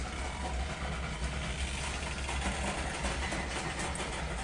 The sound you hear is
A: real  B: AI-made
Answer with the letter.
A